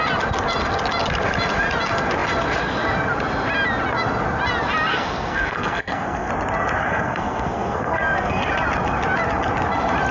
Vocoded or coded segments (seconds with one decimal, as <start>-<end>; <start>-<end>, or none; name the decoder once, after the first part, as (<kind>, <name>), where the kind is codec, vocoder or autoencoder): 4.9-6.3 (codec, SNAC); 6.8-8.4